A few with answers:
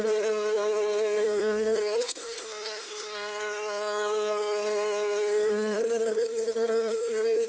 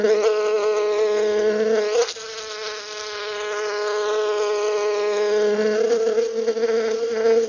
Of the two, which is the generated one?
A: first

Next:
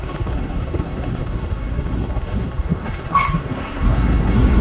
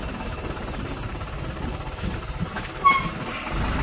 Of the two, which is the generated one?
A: first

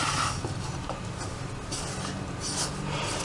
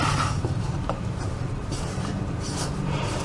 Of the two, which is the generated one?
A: second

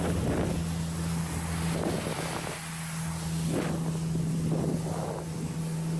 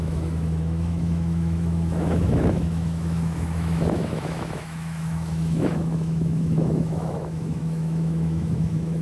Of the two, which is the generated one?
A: second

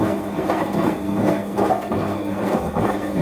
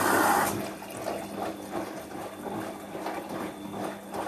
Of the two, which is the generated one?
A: first